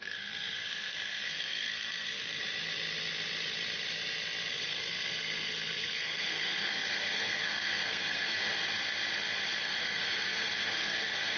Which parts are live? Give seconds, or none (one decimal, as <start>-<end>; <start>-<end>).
2.4-4.5; 8.6-9.6